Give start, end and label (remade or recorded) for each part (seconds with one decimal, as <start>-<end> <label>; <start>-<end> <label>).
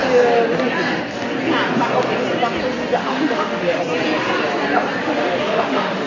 0.0-3.0 recorded; 3.0-3.8 remade; 3.8-5.0 recorded; 5.0-6.1 remade